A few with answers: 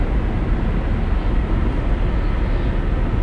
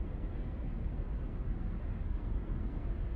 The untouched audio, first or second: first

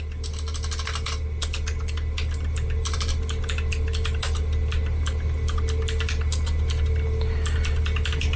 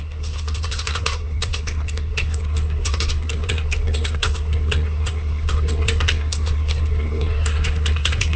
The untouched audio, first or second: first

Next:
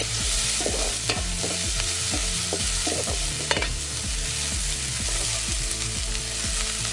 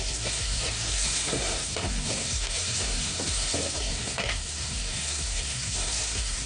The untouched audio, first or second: first